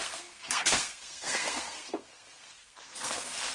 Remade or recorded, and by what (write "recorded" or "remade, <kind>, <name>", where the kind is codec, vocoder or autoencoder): remade, codec, SNAC